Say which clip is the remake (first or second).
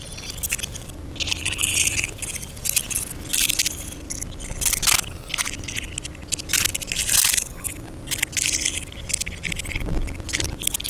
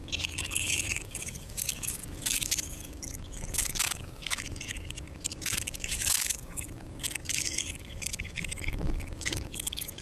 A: second